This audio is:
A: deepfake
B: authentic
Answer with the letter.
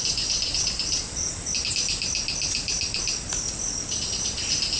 B